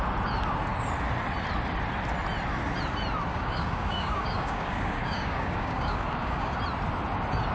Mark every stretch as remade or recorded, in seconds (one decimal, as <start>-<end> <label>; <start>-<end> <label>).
0.0-3.3 recorded; 3.3-6.6 remade; 6.6-7.5 recorded